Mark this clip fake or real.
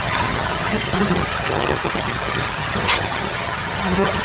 fake